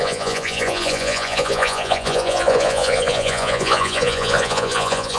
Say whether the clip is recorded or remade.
remade